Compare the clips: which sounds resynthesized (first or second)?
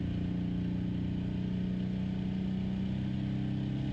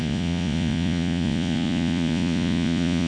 second